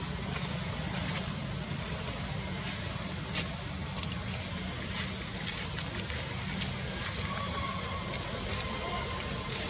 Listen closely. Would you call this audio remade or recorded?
recorded